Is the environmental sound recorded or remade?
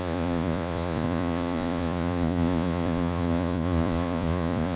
remade